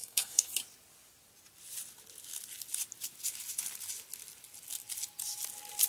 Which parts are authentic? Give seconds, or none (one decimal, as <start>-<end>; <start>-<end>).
0.5-5.9

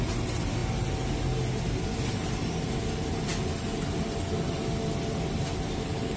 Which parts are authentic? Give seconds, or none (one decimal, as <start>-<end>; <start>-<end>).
0.0-6.2

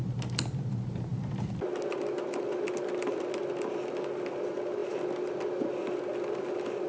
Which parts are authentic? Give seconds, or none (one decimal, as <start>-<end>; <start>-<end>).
0.0-6.9